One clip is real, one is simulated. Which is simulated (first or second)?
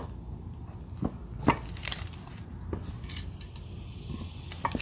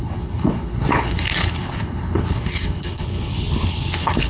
second